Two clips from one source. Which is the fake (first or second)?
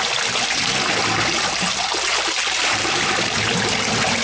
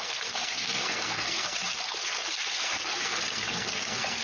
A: second